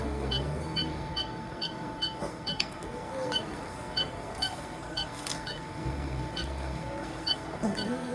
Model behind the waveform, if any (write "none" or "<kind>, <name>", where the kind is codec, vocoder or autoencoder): codec, SNAC